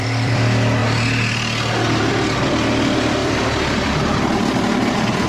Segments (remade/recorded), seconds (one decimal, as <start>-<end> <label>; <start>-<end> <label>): 0.0-0.8 remade; 0.8-2.0 recorded; 2.0-5.3 remade